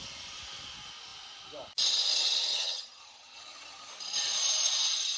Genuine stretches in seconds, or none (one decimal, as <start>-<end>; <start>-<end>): 0.0-2.5; 3.9-5.2